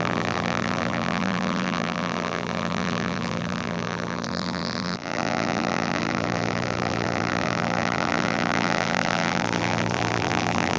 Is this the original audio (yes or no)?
no